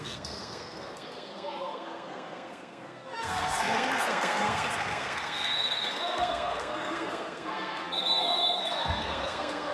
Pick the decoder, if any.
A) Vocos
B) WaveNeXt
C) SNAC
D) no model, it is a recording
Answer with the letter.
C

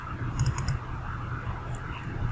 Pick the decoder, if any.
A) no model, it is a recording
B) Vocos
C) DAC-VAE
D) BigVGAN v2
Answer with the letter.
A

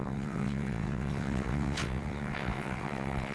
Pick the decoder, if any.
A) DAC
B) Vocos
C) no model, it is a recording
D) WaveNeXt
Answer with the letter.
D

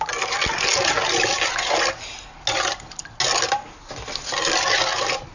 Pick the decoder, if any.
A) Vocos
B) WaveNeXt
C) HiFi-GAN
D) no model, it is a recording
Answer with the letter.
D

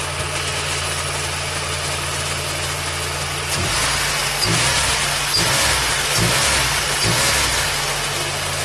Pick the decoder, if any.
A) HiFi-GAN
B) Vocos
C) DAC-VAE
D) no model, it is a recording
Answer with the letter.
D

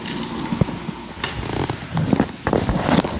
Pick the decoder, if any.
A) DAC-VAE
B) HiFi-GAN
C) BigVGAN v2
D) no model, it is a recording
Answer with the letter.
D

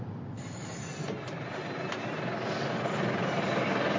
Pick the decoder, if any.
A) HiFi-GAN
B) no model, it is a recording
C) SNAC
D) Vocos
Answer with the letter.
B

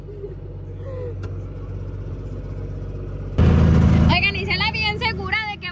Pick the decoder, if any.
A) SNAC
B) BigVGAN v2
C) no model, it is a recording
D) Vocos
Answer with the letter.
C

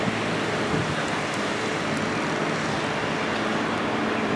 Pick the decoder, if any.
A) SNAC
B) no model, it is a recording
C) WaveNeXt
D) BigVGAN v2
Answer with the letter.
B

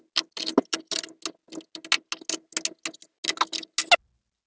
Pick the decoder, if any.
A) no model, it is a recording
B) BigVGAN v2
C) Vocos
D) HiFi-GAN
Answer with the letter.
A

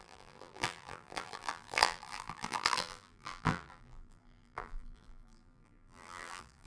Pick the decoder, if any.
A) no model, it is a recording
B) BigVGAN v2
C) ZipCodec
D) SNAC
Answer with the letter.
B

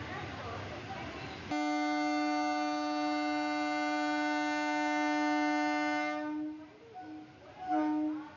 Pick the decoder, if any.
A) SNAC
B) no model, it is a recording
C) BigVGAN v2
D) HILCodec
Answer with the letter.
B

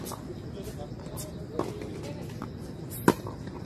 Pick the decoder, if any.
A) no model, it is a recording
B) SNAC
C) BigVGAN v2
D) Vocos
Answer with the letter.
C